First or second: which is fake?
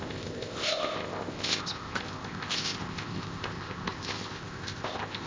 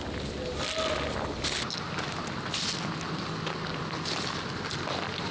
first